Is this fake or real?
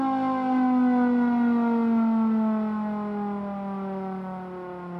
real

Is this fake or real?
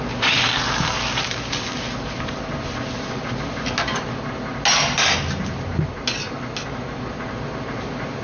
real